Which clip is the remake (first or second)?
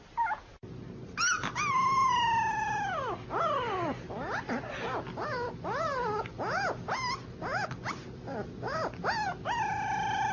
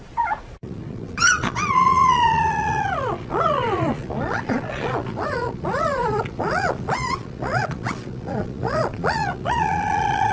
second